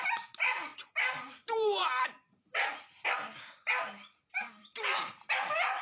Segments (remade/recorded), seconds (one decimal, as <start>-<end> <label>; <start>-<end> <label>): 0.0-0.7 remade; 0.7-1.3 recorded; 1.3-1.8 remade; 1.8-4.6 recorded; 4.6-5.8 remade